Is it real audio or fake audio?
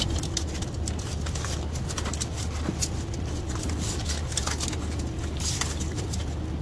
real